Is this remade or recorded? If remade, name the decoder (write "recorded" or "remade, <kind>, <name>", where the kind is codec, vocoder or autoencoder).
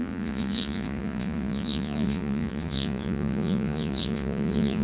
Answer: remade, vocoder, Vocos